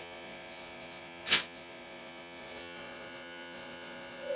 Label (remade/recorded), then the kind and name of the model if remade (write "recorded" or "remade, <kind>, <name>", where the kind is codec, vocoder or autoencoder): remade, vocoder, Vocos